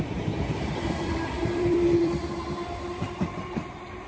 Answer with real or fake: fake